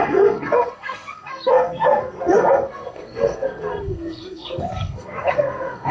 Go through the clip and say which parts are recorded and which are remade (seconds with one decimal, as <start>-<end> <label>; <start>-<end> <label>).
0.0-5.9 remade